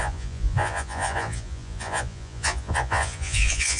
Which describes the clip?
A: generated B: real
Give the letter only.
A